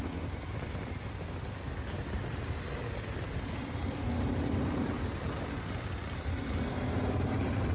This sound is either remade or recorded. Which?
recorded